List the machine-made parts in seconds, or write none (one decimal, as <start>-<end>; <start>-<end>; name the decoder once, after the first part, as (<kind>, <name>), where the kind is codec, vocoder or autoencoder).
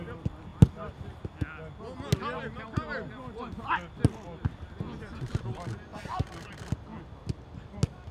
none